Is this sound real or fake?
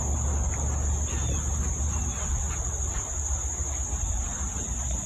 real